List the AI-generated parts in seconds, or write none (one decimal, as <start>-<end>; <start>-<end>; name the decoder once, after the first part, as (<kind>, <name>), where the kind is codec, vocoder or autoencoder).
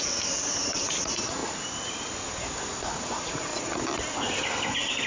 0.0-1.4 (vocoder, Vocos); 2.7-3.5